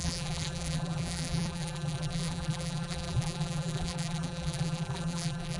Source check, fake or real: fake